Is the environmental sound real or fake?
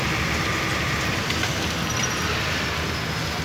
real